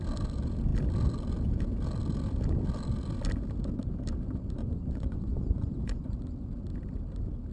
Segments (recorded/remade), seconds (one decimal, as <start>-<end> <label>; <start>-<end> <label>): 0.0-4.6 recorded; 4.6-6.1 remade; 6.1-7.5 recorded